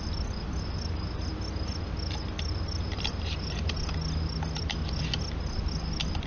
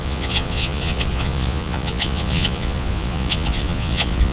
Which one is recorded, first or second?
first